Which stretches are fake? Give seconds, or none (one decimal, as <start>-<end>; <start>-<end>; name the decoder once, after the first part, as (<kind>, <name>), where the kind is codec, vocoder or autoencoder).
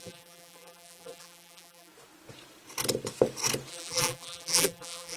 0.0-1.9 (vocoder, BigVGAN v2); 3.7-5.2